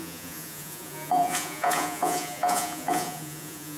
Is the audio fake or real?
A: fake